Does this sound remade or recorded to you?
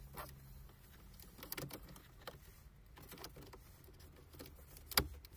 recorded